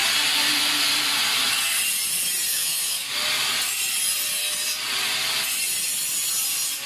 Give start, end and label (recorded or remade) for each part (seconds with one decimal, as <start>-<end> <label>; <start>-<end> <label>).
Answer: 0.0-2.5 recorded; 2.5-3.1 remade; 3.1-6.9 recorded